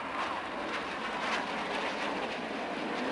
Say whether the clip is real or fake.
real